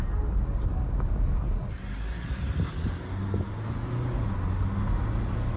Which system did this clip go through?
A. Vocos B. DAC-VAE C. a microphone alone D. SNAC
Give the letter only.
C